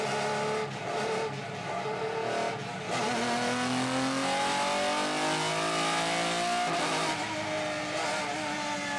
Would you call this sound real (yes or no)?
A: yes